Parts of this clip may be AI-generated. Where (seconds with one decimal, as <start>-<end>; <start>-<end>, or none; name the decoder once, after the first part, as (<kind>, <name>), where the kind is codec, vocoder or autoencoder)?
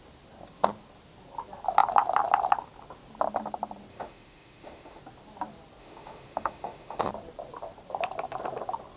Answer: 3.9-5.0 (autoencoder, DAC-VAE); 5.8-7.1